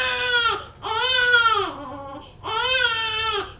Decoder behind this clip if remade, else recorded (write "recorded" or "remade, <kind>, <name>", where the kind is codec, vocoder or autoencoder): recorded